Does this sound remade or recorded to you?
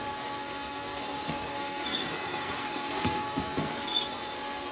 remade